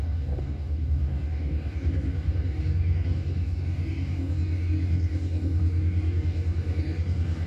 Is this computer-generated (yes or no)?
yes